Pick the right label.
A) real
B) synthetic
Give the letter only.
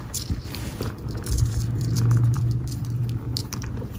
B